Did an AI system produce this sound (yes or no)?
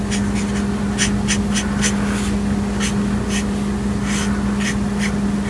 no